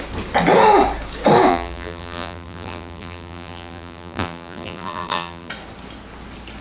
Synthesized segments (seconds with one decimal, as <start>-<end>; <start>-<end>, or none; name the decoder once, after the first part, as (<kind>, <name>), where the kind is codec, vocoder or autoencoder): 1.5-5.5 (vocoder, BigVGAN v2)